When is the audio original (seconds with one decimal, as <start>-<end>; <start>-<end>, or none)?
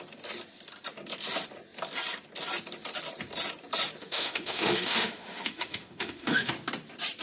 0.0-4.0; 6.5-7.2